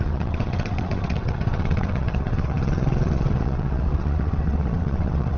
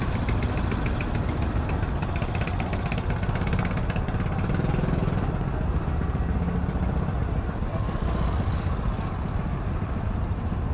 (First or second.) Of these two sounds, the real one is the second